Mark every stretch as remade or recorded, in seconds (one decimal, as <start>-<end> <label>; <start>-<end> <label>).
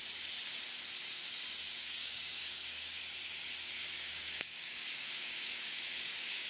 0.0-1.6 recorded; 1.6-3.0 remade; 3.0-3.8 recorded; 3.8-6.5 remade